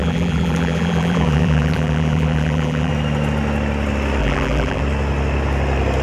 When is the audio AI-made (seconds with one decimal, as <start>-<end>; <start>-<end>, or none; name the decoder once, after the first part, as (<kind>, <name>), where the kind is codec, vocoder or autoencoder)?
0.0-2.9 (vocoder, BigVGAN v2); 4.2-4.8